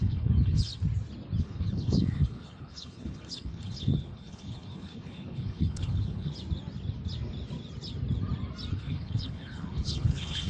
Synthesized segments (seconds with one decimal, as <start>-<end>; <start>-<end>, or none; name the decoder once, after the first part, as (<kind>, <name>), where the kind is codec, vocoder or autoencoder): 0.0-0.7 (codec, HILCodec); 1.4-6.3; 8.7-10.5